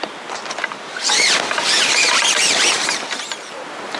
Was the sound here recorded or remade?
recorded